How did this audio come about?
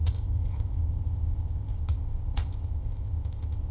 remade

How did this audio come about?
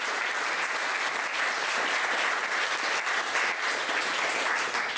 recorded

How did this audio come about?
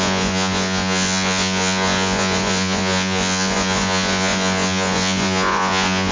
remade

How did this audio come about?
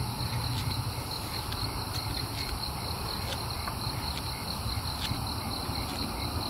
recorded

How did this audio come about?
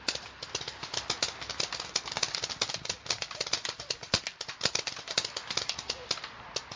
recorded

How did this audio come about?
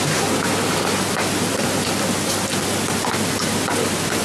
recorded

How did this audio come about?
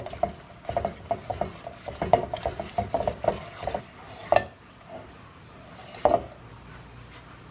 recorded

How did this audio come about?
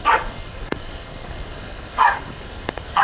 remade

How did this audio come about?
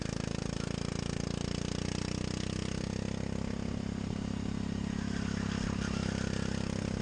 recorded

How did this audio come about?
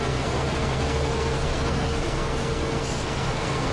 remade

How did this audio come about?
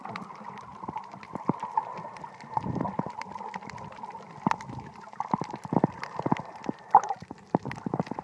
remade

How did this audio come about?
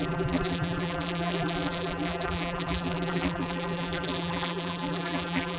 remade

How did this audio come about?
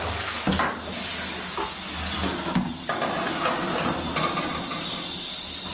recorded